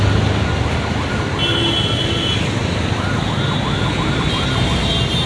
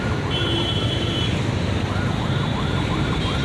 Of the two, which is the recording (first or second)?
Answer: first